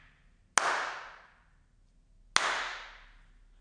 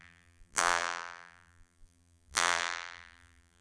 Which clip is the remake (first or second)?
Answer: second